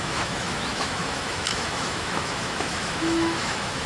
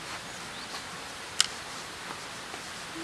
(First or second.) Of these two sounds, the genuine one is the second